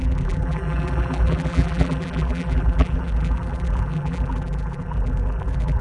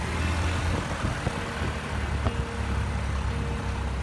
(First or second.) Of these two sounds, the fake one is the first